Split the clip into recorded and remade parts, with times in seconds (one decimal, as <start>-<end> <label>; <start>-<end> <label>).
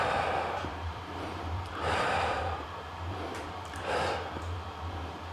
0.0-0.7 recorded; 0.7-3.9 remade; 3.9-5.3 recorded